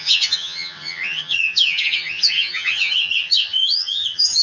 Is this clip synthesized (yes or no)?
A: yes